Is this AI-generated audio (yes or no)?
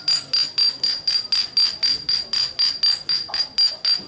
no